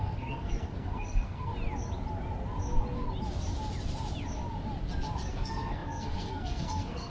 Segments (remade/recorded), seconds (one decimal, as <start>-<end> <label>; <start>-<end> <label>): 0.0-1.5 remade; 1.5-5.3 recorded; 5.3-7.1 remade